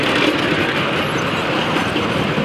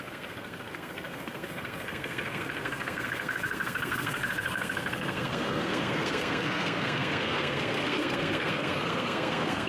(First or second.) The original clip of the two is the first